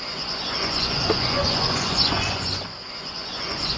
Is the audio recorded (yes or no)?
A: no